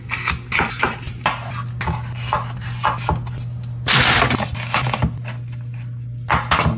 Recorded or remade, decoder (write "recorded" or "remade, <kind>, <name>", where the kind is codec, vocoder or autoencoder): recorded